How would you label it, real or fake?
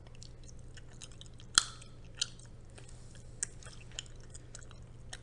real